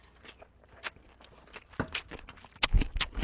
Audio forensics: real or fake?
real